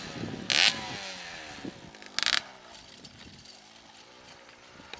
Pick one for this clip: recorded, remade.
recorded